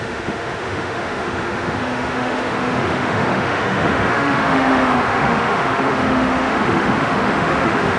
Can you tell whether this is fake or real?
fake